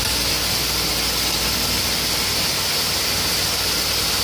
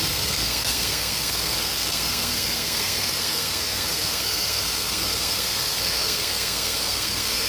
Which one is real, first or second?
first